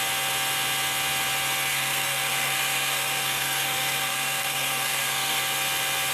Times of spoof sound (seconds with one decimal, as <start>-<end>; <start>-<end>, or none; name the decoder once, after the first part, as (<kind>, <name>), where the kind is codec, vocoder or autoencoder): 1.7-5.4 (codec, SNAC)